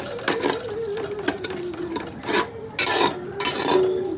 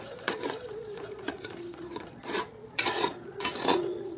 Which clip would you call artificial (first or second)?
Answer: second